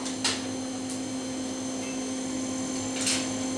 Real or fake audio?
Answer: real